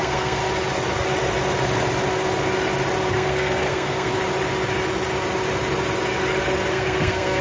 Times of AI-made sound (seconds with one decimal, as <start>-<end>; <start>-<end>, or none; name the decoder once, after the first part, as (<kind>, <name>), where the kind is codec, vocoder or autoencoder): 0.0-0.4 (codec, SNAC); 3.1-4.1; 6.7-7.4